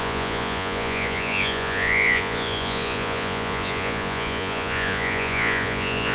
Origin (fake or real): fake